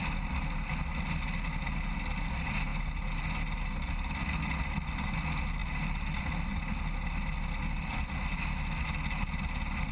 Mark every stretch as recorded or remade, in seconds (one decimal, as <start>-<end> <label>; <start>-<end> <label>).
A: 0.0-9.9 recorded